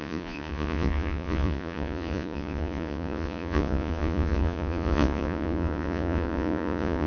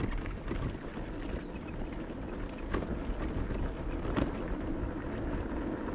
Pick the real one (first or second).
second